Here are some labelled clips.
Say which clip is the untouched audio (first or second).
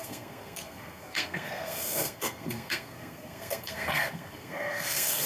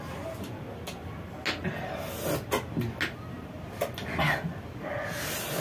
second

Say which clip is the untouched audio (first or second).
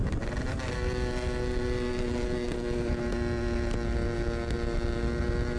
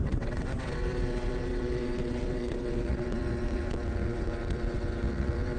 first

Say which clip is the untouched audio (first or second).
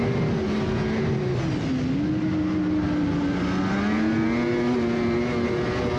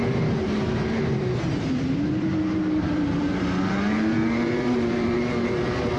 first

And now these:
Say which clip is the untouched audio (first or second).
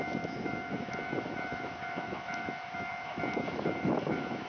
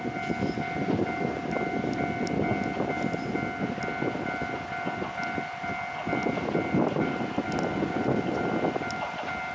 second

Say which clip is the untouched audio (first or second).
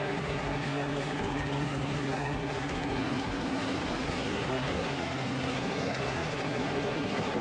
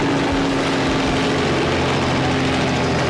second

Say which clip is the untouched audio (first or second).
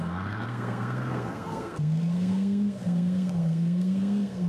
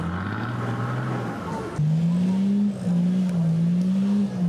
second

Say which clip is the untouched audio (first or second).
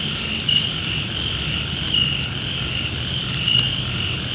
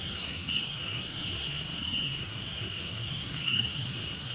first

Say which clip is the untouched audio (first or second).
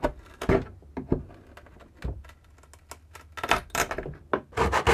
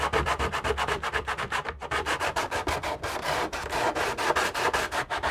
first